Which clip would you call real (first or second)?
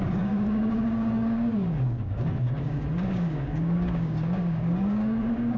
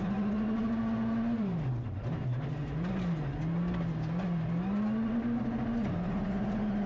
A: second